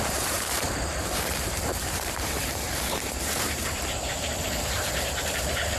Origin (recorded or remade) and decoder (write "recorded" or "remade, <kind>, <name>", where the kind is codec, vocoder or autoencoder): remade, vocoder, BigVGAN v2